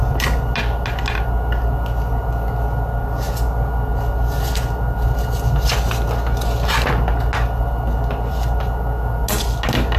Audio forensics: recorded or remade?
recorded